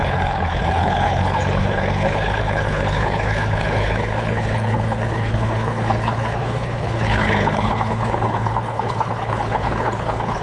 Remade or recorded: remade